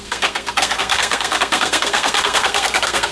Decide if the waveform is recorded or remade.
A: remade